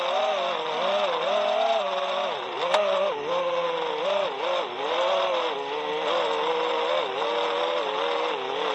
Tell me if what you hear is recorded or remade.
recorded